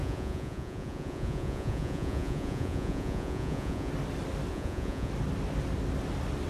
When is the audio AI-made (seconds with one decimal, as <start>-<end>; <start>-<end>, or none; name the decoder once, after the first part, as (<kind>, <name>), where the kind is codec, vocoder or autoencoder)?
0.0-3.9 (vocoder, Vocos); 4.5-5.1